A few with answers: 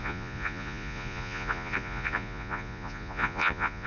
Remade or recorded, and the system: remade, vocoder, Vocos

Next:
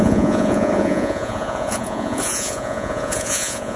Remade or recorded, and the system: remade, vocoder, Vocos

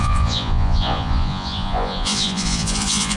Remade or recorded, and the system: remade, vocoder, Vocos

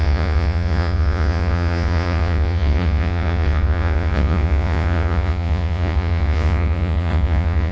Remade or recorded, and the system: remade, vocoder, Vocos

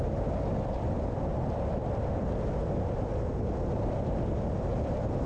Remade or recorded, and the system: recorded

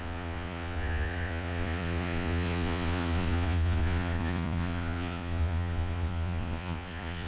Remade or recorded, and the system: remade, vocoder, Vocos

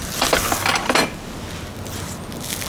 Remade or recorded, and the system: recorded